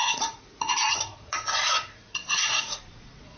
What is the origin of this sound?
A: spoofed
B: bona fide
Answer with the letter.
A